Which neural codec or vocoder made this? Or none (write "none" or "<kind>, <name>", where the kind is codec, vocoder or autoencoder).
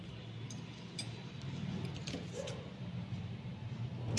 none